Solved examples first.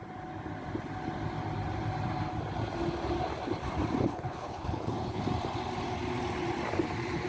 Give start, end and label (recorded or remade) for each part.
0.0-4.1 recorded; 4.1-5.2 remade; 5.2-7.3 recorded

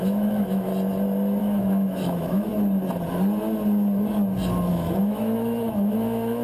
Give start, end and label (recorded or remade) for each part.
0.0-0.7 remade; 0.7-1.4 recorded; 1.4-2.5 remade; 2.5-4.7 recorded; 4.7-6.4 remade

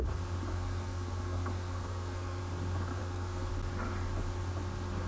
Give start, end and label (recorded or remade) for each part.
0.0-0.5 recorded; 0.5-2.4 remade; 2.4-3.0 recorded; 3.0-3.5 remade; 3.5-5.1 recorded

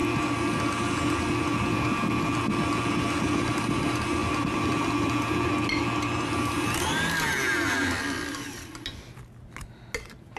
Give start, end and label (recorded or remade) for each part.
0.0-10.4 recorded